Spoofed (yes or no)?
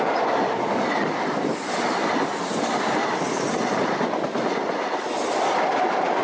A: no